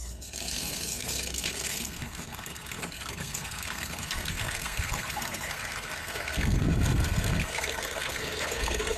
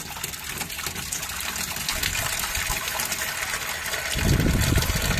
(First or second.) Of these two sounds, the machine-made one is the first